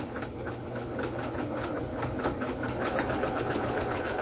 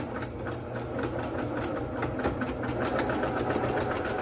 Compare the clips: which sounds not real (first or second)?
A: first